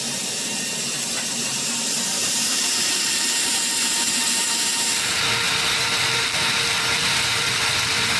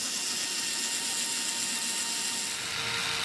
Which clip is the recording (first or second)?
second